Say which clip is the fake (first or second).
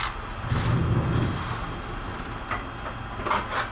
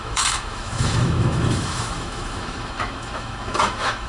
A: second